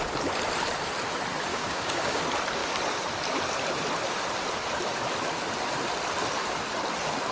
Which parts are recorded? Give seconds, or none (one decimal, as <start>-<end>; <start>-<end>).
0.0-1.5; 2.2-7.3